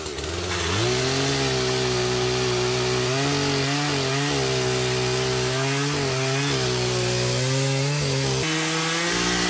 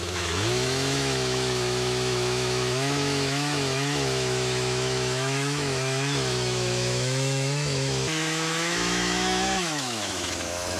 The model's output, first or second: second